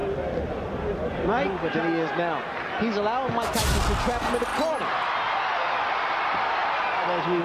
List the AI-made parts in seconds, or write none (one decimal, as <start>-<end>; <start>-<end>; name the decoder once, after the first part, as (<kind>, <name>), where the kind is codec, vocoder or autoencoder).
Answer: none